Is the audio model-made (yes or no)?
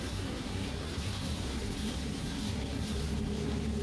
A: yes